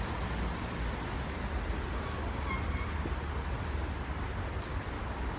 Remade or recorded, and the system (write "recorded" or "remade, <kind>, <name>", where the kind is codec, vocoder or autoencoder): recorded